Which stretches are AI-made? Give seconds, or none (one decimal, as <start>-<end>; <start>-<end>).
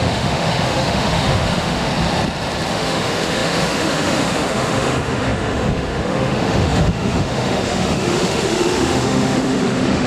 0.0-1.9; 2.7-10.1